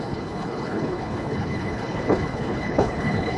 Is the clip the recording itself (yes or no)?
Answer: no